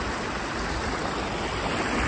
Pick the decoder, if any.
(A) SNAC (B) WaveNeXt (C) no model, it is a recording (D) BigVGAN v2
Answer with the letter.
C